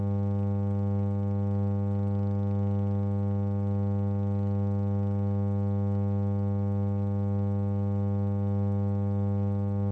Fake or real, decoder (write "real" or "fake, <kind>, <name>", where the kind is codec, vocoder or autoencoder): real